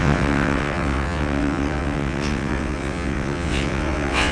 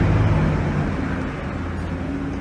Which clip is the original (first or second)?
second